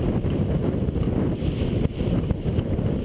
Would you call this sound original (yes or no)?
yes